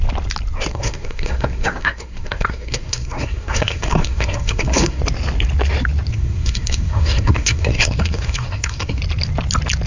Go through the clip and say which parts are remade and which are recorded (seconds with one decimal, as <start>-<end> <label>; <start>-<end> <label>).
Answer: 0.0-0.7 recorded; 0.7-5.0 remade; 5.0-6.1 recorded; 6.1-9.0 remade; 9.0-9.9 recorded